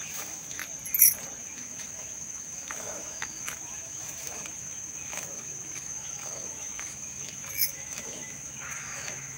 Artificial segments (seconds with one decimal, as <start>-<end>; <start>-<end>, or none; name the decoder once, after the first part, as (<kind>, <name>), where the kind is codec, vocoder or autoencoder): 0.0-0.6 (autoencoder, DAC-VAE); 1.4-9.4